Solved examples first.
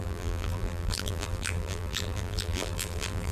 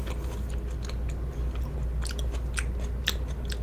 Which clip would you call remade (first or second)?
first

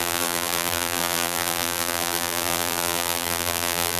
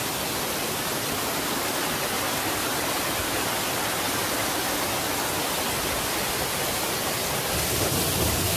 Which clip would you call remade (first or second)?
first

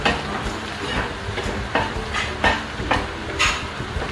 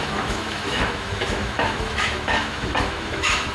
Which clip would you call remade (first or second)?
second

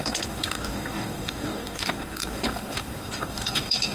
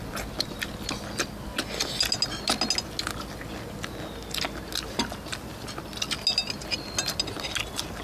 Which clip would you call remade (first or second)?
first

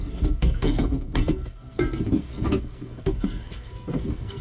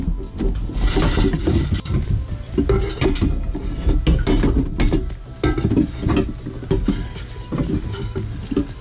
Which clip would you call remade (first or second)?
first